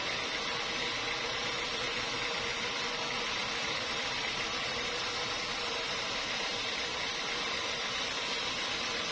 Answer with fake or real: real